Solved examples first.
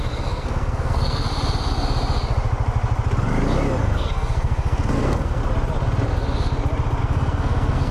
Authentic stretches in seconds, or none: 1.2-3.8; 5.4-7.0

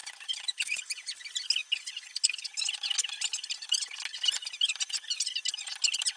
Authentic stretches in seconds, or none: 0.0-6.2

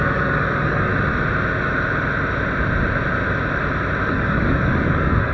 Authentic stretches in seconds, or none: 0.9-4.1

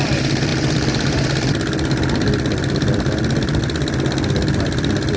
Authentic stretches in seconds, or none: 0.0-5.2

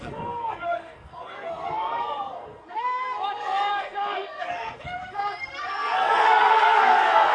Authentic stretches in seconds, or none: none

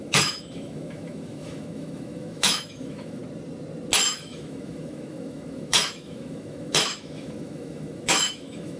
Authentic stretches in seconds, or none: 3.2-4.1

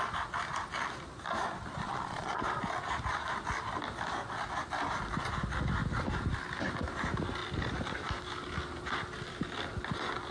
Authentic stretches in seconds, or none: 0.0-1.8; 2.4-10.3

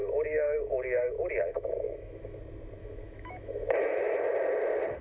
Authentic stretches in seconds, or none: 2.4-2.8; 4.2-5.0